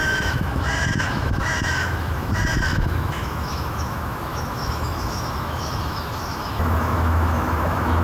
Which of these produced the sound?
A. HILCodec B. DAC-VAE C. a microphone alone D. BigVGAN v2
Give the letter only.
B